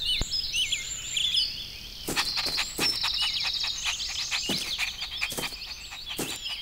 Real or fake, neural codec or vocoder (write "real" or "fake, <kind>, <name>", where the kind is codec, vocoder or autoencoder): real